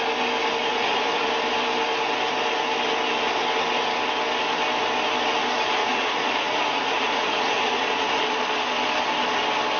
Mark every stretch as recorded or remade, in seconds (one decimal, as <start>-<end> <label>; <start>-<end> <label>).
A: 0.0-0.6 recorded; 0.6-1.3 remade; 1.3-5.8 recorded; 5.8-8.2 remade; 8.2-9.8 recorded